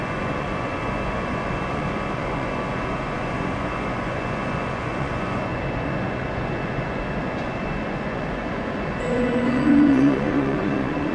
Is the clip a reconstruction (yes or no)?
yes